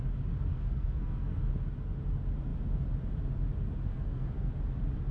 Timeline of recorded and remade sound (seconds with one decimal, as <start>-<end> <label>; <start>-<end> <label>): 0.0-0.5 recorded; 0.5-1.4 remade; 1.4-3.9 recorded; 3.9-4.5 remade; 4.5-5.1 recorded